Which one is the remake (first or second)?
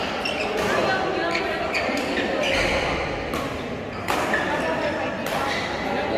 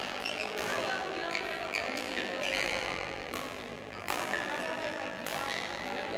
second